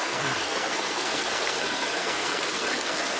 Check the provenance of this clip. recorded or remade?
remade